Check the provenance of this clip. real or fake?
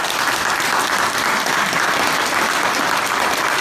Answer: real